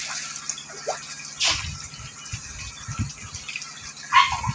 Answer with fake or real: real